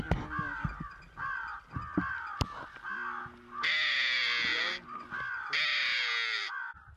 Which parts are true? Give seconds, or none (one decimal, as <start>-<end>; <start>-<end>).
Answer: 0.0-7.0